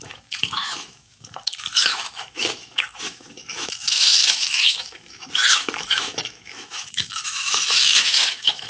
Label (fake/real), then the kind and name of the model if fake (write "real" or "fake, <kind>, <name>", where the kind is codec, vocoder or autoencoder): fake, autoencoder, DAC-VAE